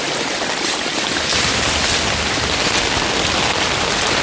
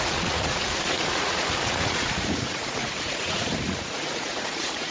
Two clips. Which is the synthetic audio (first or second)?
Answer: second